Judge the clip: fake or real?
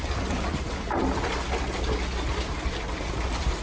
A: real